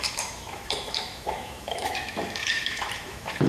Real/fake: fake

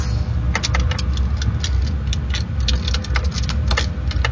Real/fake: real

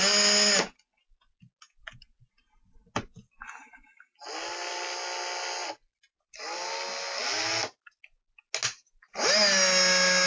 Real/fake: real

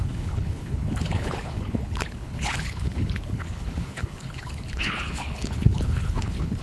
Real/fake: fake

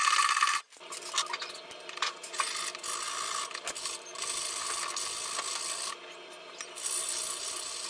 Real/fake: real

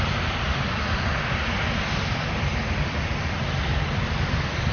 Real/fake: fake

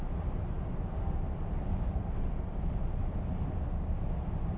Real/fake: real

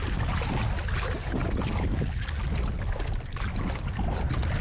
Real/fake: real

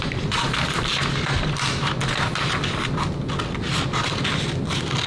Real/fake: real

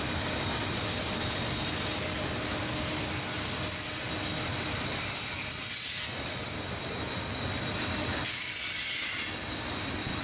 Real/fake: real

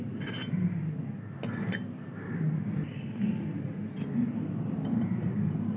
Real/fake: real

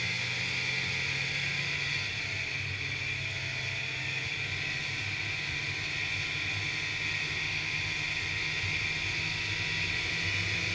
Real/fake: real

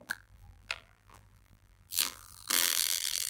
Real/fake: fake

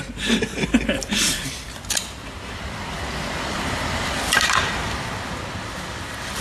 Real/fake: fake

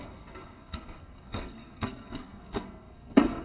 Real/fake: fake